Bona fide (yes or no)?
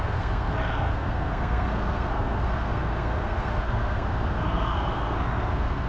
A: no